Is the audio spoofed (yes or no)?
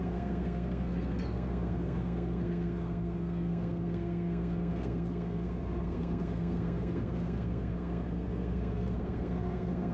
yes